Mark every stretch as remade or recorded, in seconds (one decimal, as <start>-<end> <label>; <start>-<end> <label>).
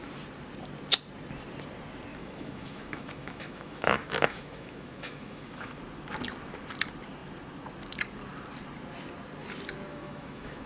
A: 0.0-2.1 recorded; 2.1-5.7 remade; 5.7-9.9 recorded; 9.9-10.7 remade